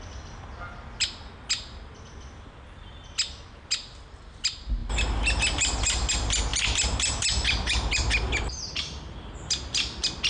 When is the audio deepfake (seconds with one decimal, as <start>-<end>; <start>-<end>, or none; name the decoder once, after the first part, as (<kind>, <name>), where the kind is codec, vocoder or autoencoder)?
6.5-9.5 (vocoder, BigVGAN v2)